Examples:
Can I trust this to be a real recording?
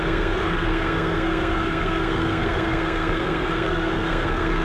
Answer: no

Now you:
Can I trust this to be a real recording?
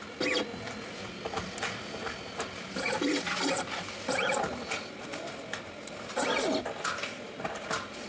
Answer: yes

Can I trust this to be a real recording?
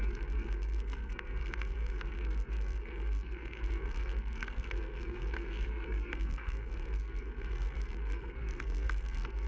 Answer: no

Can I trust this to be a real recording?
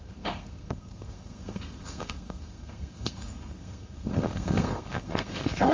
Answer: no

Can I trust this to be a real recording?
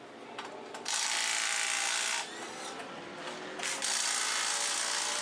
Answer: yes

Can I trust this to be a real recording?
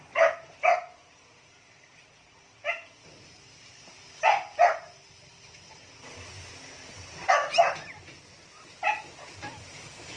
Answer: yes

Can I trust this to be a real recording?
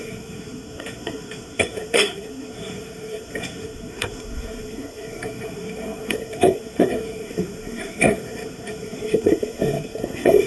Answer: no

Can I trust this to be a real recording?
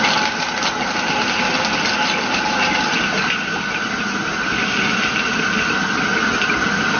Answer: yes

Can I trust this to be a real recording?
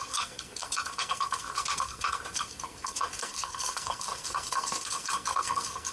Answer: no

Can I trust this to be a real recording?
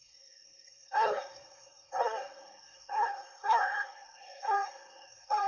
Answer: no